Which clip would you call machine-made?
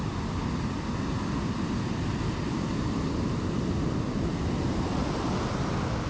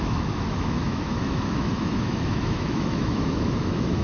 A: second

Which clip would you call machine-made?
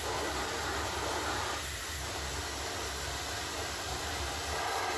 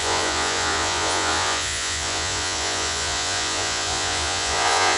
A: second